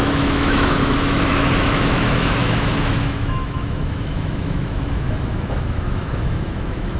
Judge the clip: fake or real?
fake